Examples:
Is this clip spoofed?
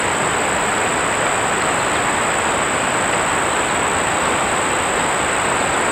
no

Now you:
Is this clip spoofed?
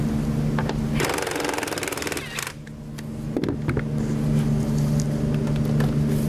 no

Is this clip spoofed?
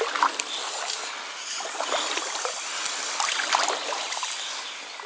no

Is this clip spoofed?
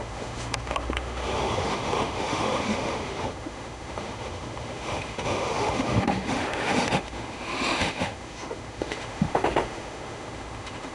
yes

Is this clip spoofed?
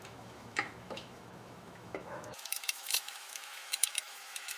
yes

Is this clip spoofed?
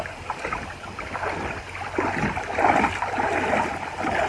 no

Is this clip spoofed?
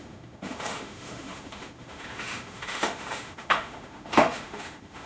yes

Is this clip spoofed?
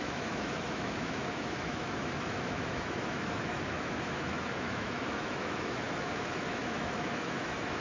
yes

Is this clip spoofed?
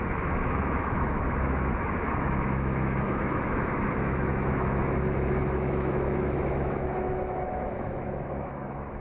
yes